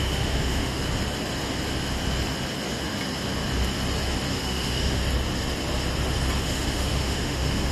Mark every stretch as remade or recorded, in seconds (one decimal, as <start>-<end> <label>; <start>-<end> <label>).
0.0-0.8 remade; 0.8-4.4 recorded; 4.4-5.0 remade; 5.0-6.4 recorded; 6.4-7.7 remade